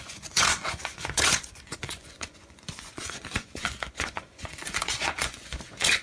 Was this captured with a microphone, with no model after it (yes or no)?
no